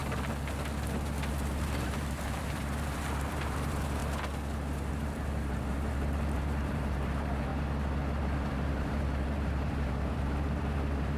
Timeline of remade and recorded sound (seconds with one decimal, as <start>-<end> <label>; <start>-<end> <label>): 0.0-1.3 recorded; 1.3-4.0 remade; 4.0-4.9 recorded; 4.9-7.5 remade; 7.5-8.2 recorded; 8.2-11.2 remade